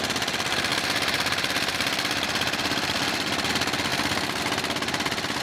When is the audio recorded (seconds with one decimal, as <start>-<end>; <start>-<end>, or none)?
0.0-0.7; 3.5-5.4